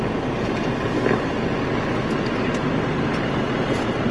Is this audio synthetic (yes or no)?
no